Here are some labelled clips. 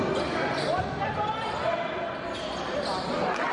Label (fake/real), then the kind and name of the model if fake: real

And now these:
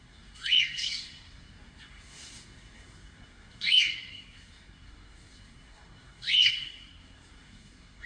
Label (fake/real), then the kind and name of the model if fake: fake, codec, SNAC